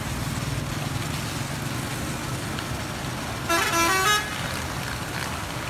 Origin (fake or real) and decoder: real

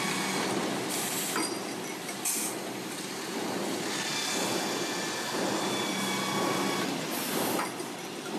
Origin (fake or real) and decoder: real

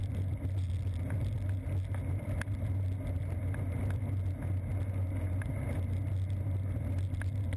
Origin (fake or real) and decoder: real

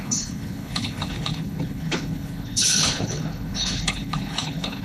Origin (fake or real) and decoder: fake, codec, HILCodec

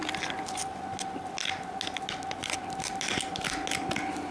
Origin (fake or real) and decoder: real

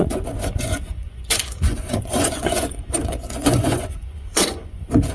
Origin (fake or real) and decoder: fake, vocoder, Vocos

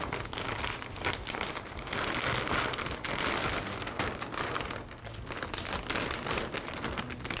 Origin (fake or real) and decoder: real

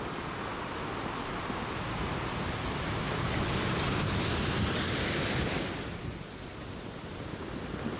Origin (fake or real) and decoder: real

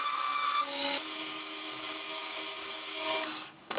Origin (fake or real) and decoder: fake, codec, DAC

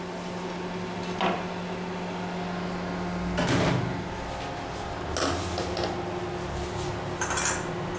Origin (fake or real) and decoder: real